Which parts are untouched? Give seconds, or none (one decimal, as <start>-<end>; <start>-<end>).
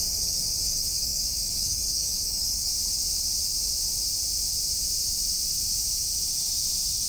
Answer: 2.7-7.1